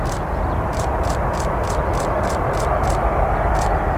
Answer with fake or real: real